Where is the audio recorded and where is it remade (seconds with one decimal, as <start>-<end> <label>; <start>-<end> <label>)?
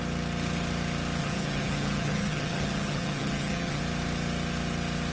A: 0.0-1.2 recorded; 1.2-3.8 remade; 3.8-5.1 recorded